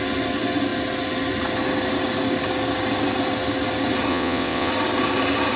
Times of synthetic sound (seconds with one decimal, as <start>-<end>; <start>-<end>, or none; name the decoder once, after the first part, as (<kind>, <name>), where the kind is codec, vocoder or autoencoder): 4.1-4.7 (vocoder, WaveNeXt)